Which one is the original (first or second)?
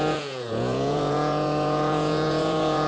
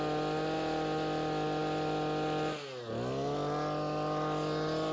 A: second